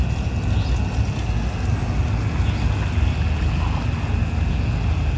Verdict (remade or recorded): recorded